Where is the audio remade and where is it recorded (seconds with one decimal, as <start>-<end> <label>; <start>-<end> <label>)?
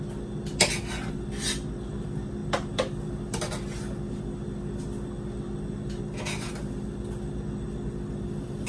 0.0-8.7 recorded